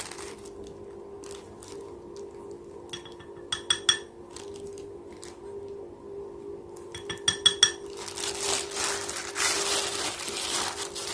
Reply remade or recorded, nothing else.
recorded